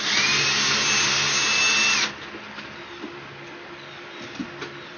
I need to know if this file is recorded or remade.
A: recorded